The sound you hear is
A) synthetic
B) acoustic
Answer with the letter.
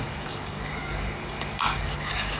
A